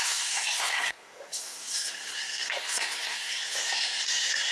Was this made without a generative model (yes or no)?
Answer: no